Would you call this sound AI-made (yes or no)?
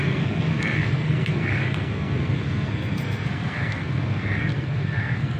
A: yes